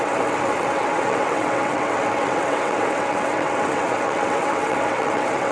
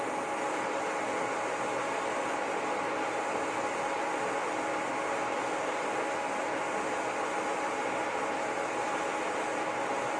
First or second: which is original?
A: second